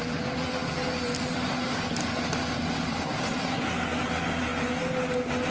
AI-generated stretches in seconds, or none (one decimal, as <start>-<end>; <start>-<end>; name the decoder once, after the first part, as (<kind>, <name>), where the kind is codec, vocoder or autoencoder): none